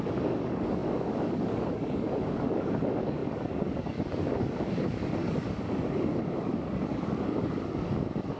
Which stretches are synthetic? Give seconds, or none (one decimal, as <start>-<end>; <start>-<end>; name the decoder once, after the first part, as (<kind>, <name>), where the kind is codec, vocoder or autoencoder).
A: 0.0-8.4 (codec, DAC)